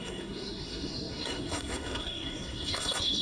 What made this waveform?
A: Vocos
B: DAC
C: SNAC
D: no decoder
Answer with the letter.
C